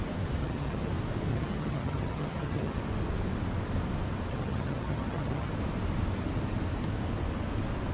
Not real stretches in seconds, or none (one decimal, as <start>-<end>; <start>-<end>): 0.4-0.9; 1.3-2.8; 4.3-5.5